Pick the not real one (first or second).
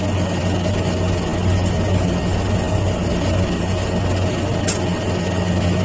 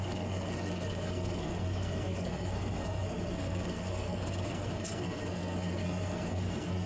second